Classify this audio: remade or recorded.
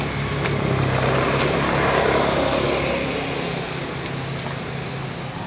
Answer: recorded